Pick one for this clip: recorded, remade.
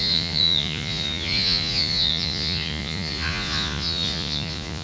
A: remade